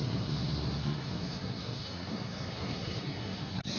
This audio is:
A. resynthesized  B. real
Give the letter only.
A